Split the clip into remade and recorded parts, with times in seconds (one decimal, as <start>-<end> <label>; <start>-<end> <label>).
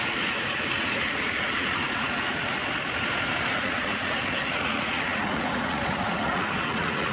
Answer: 0.0-2.6 remade; 2.6-3.6 recorded; 3.6-7.1 remade